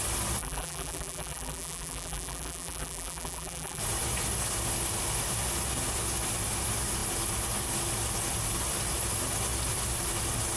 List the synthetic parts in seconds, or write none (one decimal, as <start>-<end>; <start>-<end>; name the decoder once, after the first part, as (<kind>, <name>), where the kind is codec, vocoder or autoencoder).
0.4-3.8 (vocoder, BigVGAN v2)